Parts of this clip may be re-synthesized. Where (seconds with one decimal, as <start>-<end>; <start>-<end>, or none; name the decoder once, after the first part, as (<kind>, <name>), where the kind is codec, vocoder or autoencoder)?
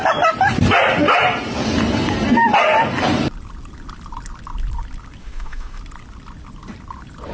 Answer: 5.2-5.8 (autoencoder, DAC-VAE)